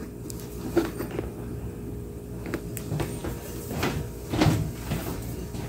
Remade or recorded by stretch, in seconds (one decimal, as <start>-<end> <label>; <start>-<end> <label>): 0.0-5.1 recorded; 5.1-5.7 remade

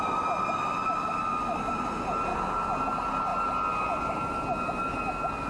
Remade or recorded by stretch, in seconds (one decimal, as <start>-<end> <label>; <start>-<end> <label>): 0.0-3.3 recorded; 3.3-5.1 remade; 5.1-5.5 recorded

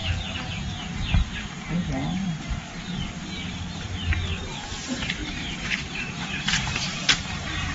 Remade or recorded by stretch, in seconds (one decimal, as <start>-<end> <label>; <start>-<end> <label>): 0.0-4.6 recorded; 4.6-7.7 remade

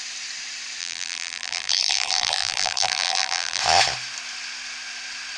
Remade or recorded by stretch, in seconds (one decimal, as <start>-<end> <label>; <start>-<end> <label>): 0.0-0.8 recorded; 0.8-3.6 remade; 3.6-5.4 recorded

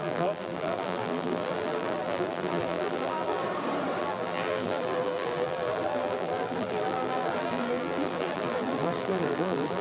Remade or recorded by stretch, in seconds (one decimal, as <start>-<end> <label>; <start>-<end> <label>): 0.0-3.4 remade; 3.4-4.0 recorded; 4.0-9.8 remade

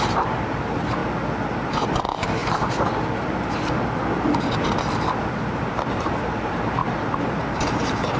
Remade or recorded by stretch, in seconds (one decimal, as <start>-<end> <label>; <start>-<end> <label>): 0.0-1.0 remade; 1.0-1.6 recorded; 1.6-2.4 remade; 2.4-5.3 recorded; 5.3-8.2 remade